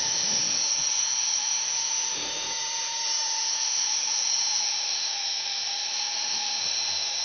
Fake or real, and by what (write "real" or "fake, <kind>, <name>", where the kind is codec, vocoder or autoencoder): fake, autoencoder, DAC-VAE